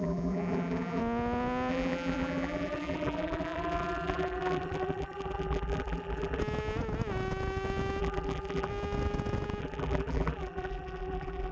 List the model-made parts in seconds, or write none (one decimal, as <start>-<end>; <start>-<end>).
0.0-1.0; 1.7-6.4; 8.0-8.7; 9.6-11.5